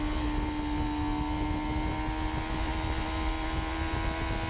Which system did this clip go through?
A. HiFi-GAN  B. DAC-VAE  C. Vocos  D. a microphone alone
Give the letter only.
D